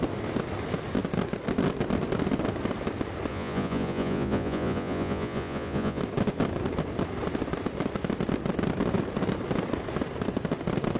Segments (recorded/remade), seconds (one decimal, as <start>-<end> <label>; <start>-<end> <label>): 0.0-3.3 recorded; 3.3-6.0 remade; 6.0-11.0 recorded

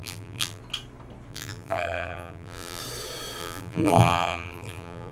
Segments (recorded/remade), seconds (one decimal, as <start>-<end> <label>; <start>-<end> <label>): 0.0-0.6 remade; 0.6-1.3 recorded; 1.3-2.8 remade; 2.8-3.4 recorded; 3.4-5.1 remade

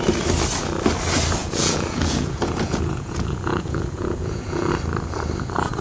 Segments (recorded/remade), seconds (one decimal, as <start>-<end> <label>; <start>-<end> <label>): 0.0-1.4 recorded; 1.4-4.7 remade; 4.7-5.8 recorded